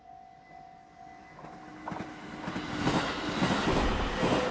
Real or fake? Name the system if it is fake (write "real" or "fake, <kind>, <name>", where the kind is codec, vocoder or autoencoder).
real